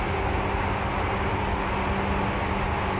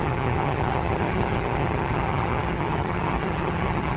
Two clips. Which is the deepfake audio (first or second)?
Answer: second